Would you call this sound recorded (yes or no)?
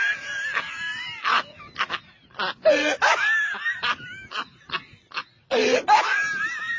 yes